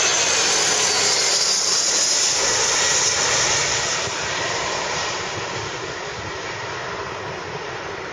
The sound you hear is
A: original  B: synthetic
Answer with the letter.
A